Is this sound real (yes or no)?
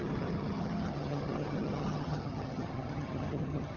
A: no